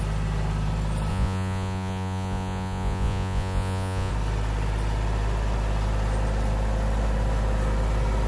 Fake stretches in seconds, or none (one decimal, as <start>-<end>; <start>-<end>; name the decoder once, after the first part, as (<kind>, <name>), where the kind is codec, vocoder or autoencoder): 1.1-4.1 (vocoder, Vocos)